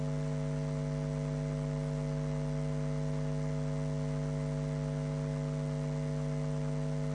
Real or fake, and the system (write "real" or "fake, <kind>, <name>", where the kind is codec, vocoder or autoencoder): real